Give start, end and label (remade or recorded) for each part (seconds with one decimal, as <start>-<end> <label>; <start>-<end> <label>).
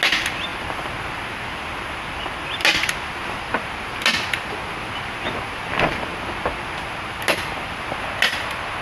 0.0-8.8 recorded